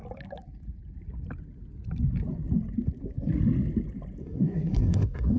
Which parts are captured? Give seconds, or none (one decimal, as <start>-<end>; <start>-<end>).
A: 0.0-4.2